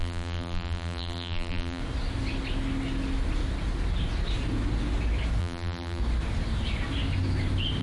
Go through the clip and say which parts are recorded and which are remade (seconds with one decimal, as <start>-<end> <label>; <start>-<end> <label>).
0.0-1.8 remade; 1.8-5.4 recorded; 5.4-6.0 remade; 6.0-7.8 recorded